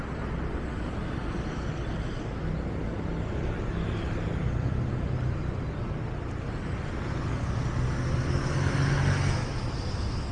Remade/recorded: recorded